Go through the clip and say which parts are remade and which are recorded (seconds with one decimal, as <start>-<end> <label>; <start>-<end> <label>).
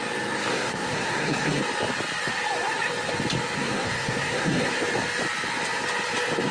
0.0-0.5 recorded; 0.5-1.6 remade; 1.6-3.6 recorded; 3.6-4.8 remade; 4.8-6.5 recorded